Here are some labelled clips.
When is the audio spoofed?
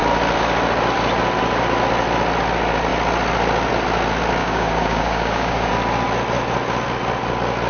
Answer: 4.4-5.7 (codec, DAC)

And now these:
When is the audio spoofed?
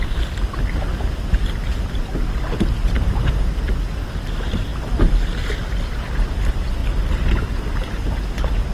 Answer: none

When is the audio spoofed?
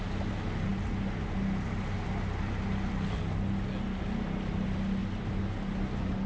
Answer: none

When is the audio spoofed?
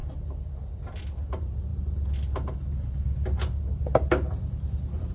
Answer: none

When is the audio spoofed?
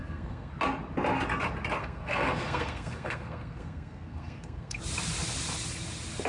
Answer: 0.0-0.5 (codec, SNAC); 1.8-4.8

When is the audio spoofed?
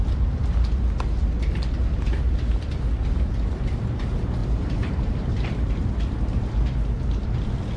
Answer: 4.4-5.9 (vocoder, BigVGAN v2)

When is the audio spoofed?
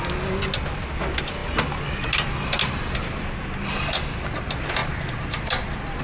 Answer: 4.8-6.0 (vocoder, BigVGAN v2)